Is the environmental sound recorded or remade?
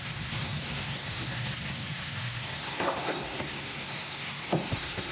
remade